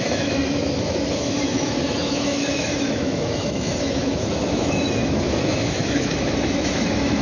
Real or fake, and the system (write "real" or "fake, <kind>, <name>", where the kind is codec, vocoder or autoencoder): fake, autoencoder, DAC-VAE